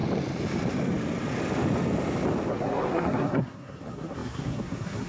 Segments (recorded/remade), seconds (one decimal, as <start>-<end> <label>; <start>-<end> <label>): 0.0-2.5 recorded; 2.5-5.1 remade